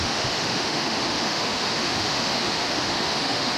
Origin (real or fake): fake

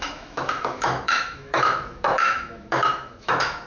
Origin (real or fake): fake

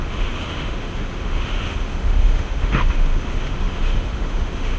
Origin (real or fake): fake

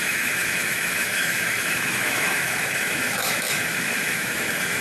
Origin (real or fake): fake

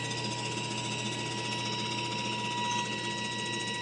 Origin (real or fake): real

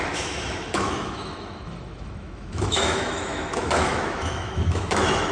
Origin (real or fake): fake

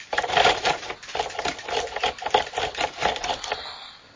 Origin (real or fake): real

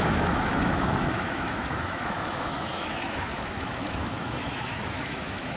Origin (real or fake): fake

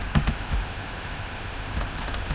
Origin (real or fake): fake